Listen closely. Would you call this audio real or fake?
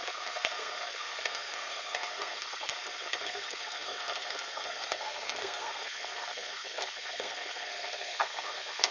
fake